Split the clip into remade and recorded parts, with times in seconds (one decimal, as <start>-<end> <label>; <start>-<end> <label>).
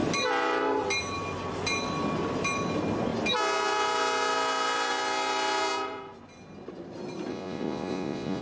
0.0-7.3 recorded; 7.3-8.4 remade